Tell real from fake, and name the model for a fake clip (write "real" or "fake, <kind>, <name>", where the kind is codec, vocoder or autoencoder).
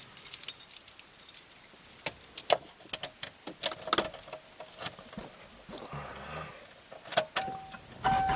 real